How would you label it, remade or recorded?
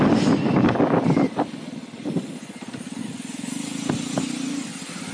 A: recorded